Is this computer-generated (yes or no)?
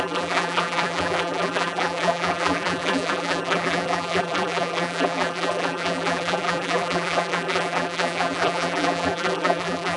yes